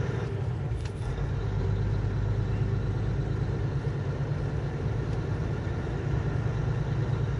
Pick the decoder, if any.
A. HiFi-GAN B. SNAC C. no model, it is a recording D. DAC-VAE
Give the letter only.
C